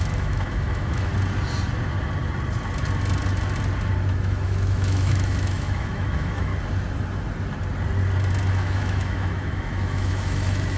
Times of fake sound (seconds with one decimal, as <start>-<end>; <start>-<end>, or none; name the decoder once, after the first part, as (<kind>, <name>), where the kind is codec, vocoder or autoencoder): 0.0-1.1 (autoencoder, DAC-VAE); 4.1-6.5; 8.5-10.8